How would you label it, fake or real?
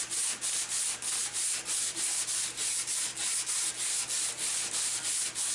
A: real